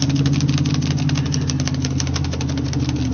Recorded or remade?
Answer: recorded